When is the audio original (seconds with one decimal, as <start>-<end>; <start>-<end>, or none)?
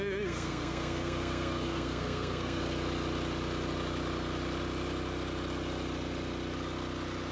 2.6-7.3